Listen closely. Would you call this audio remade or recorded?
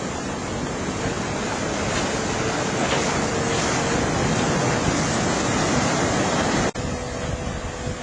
recorded